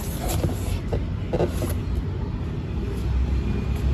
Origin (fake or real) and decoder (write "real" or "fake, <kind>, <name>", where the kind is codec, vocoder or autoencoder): real